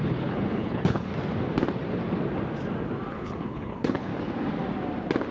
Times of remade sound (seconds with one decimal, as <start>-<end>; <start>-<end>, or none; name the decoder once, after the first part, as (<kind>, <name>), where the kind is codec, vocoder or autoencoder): 0.0-1.1 (codec, HILCodec); 3.1-4.1